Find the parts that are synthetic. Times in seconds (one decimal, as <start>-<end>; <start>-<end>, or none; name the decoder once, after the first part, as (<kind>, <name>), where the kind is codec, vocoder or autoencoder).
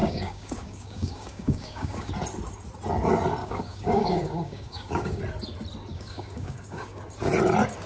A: 0.0-2.1 (codec, DAC); 3.4-5.2; 5.9-7.0